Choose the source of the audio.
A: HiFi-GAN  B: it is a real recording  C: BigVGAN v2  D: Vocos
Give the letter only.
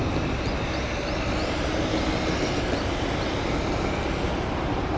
B